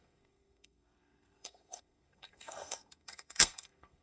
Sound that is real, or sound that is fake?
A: fake